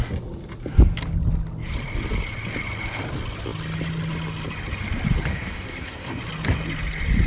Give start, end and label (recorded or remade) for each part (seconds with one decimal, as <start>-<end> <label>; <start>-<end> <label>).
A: 0.0-5.3 recorded; 5.3-6.2 remade; 6.2-7.3 recorded